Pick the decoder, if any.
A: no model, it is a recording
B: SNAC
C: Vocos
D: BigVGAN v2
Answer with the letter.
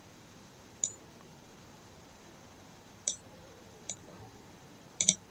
D